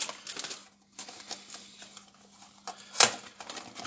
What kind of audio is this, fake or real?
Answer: real